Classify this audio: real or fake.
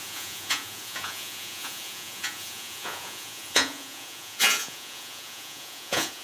fake